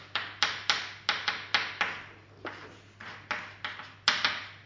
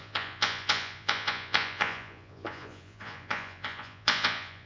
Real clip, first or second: first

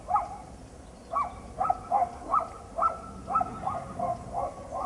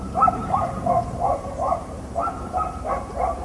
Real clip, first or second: first